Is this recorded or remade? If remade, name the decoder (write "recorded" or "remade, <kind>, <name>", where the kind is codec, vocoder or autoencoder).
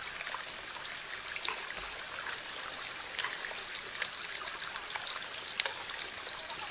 recorded